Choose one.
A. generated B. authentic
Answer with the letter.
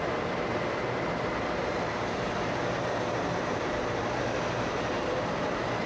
A